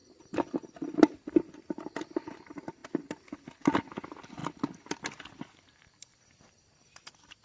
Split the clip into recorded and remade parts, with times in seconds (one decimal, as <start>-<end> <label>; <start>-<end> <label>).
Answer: 0.0-7.4 recorded